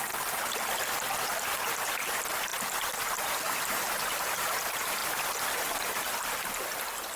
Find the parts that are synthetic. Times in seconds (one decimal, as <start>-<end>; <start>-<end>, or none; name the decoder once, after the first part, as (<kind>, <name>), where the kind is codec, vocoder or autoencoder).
none